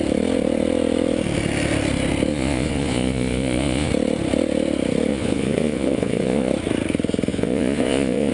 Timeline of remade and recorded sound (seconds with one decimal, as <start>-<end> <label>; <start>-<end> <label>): 0.0-2.3 recorded; 2.3-3.9 remade; 3.9-5.1 recorded; 5.1-6.5 remade; 6.5-7.3 recorded; 7.3-8.3 remade